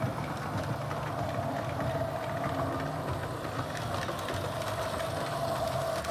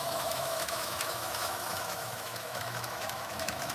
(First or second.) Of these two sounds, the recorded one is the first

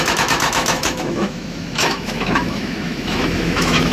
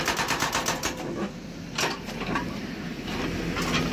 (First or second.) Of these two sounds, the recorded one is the second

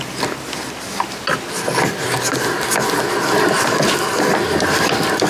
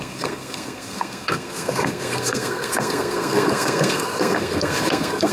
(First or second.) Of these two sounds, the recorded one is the first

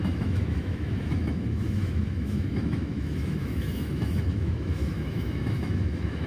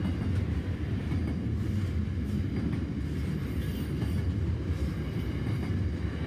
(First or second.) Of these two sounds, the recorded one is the second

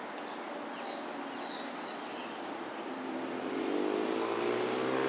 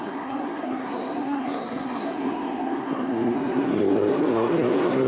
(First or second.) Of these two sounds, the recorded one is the first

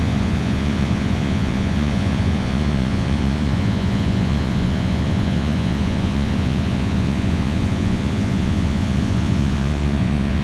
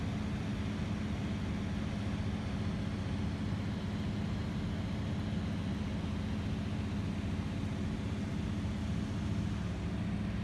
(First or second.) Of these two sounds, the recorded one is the second